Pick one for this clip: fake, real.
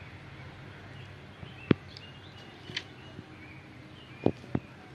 real